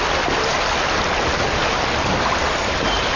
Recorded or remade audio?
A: recorded